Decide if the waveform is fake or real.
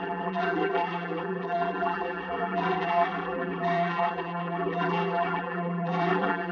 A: fake